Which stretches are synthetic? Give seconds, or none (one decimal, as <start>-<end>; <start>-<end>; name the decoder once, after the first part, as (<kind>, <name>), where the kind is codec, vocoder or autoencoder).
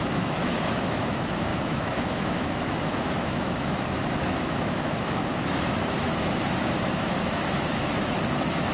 0.0-8.7 (autoencoder, DAC-VAE)